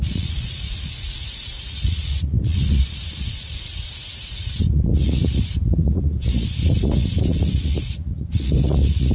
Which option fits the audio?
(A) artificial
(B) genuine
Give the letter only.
A